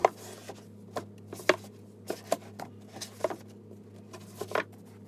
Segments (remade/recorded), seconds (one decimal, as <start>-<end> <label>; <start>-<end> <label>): 0.0-5.1 recorded